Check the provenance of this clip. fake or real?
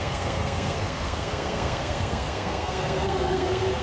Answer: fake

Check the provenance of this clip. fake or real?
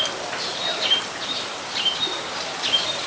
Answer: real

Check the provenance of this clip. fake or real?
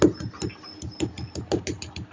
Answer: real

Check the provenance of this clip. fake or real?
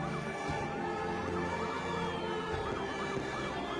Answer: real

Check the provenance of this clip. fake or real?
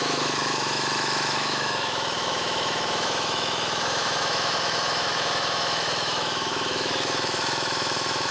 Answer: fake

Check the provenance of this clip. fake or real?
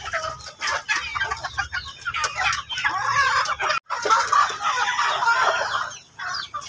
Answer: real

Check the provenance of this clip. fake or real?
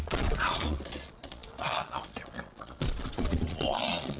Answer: fake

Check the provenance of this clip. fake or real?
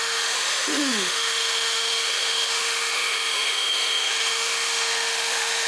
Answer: fake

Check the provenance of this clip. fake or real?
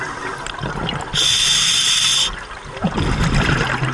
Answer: real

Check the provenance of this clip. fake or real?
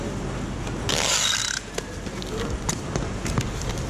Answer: real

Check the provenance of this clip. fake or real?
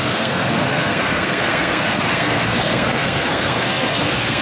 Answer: fake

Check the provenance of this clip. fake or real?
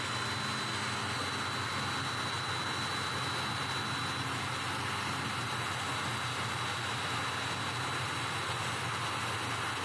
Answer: real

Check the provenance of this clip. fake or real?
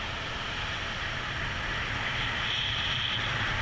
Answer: real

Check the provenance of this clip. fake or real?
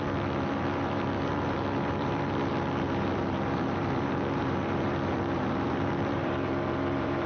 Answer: fake